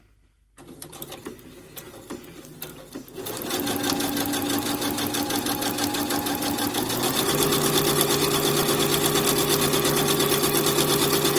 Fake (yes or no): no